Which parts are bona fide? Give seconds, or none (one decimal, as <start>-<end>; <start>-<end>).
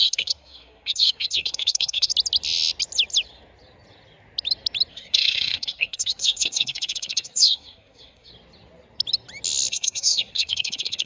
2.1-4.9; 8.3-9.7